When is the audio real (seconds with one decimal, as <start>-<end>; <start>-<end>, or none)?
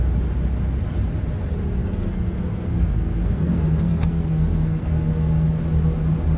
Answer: 0.0-1.8; 5.6-6.4